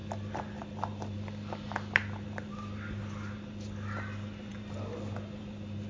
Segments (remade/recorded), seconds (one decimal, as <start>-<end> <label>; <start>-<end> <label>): 0.0-5.9 recorded